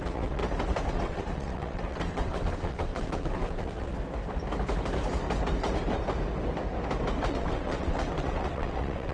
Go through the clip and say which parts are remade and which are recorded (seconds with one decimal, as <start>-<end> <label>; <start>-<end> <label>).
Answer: 0.0-0.4 remade; 0.4-0.9 recorded; 0.9-3.9 remade; 3.9-7.3 recorded; 7.3-9.1 remade

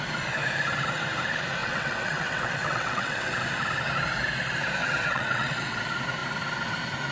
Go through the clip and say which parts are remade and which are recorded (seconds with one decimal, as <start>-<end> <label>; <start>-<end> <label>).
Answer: 0.0-1.6 recorded; 1.6-3.4 remade; 3.4-4.8 recorded; 4.8-5.8 remade; 5.8-7.1 recorded

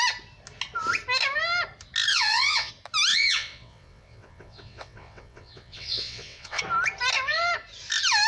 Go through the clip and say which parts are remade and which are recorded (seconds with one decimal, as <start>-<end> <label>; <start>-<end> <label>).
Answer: 0.0-2.1 recorded; 2.1-2.7 remade; 2.7-3.1 recorded; 3.1-6.6 remade; 6.6-8.3 recorded

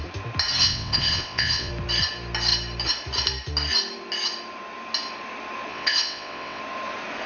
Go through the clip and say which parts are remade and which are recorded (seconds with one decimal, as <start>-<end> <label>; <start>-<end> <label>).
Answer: 0.0-0.6 recorded; 0.6-1.7 remade; 1.7-5.7 recorded; 5.7-6.6 remade; 6.6-7.3 recorded

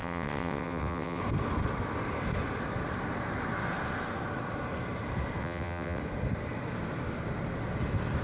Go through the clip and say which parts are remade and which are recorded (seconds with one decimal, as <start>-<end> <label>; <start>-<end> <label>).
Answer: 0.0-1.2 remade; 1.2-5.4 recorded; 5.4-6.0 remade; 6.0-8.2 recorded

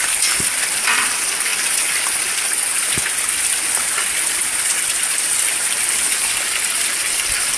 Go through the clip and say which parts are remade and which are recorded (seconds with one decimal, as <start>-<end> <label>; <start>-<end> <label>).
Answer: 0.0-7.6 recorded